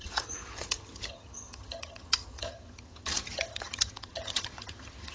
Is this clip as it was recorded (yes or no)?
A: no